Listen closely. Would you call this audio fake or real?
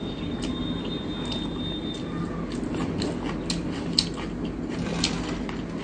real